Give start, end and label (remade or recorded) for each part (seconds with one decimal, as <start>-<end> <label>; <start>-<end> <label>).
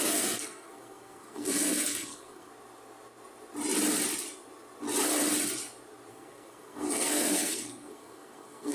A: 0.0-2.5 remade; 2.5-6.1 recorded; 6.1-8.7 remade